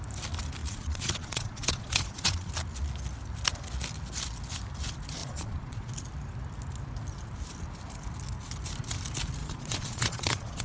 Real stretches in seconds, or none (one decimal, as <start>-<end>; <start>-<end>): 0.0-0.6; 2.5-5.2; 5.9-9.4